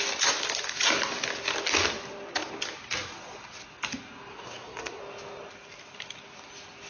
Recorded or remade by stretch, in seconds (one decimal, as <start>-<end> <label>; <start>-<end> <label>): 0.0-4.3 recorded; 4.3-5.0 remade; 5.0-6.9 recorded